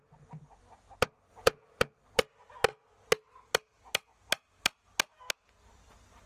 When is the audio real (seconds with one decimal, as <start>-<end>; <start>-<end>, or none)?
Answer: 0.0-1.3; 1.8-6.3